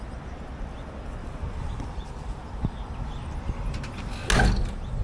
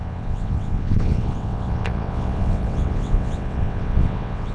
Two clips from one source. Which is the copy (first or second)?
second